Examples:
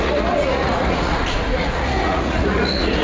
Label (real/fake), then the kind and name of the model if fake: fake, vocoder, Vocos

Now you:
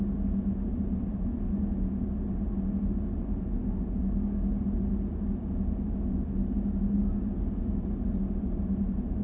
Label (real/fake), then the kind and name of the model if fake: real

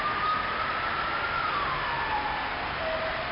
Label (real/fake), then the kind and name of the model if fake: real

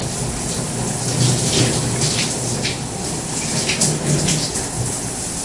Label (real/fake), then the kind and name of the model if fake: real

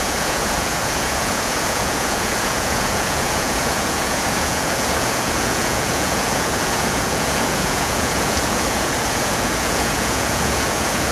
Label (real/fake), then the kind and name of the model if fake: fake, vocoder, Vocos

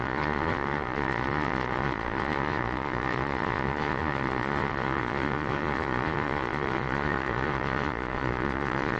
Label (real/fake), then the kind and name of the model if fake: fake, vocoder, Vocos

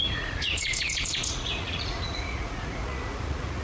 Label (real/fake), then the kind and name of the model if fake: fake, vocoder, Vocos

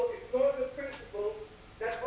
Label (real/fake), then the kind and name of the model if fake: real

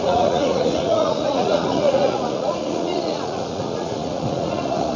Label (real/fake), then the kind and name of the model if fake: fake, vocoder, Vocos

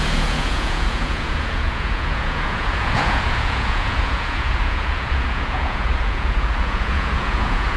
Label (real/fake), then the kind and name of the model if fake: fake, vocoder, Vocos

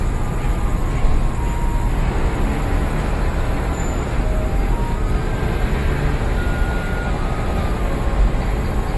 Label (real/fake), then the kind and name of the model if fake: real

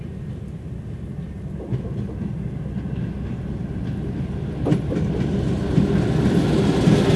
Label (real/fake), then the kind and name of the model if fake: real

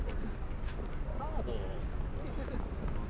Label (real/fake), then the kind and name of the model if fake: real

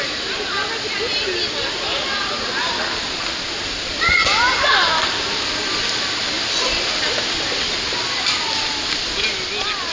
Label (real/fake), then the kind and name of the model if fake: real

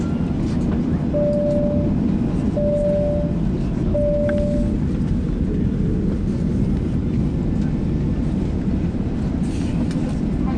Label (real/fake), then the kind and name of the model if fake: real